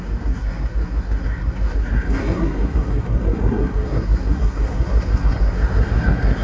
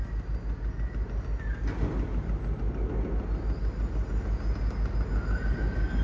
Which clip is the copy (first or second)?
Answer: first